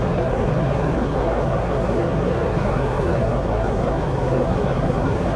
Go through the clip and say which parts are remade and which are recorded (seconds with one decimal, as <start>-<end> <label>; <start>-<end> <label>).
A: 0.0-5.4 remade